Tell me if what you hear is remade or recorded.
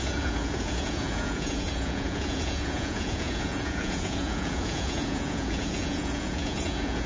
remade